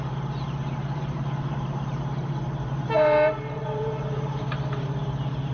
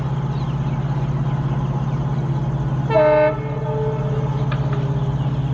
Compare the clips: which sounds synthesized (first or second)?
first